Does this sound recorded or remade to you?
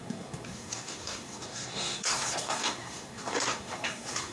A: remade